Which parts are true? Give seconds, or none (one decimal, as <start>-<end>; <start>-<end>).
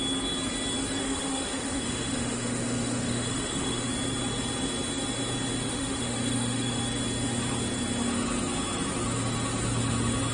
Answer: 0.0-1.0; 3.9-5.6; 6.8-10.3